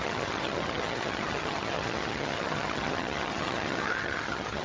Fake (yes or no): yes